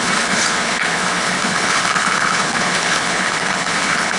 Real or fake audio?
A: fake